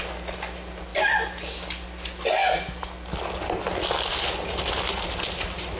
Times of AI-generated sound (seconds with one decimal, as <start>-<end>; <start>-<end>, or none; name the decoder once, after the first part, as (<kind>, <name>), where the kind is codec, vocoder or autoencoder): none